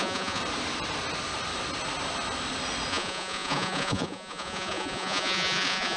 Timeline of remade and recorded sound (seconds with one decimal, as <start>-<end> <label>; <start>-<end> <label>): 0.0-0.4 remade; 0.4-2.9 recorded; 2.9-6.0 remade